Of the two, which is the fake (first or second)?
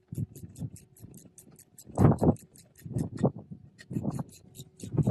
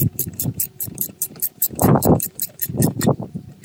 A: second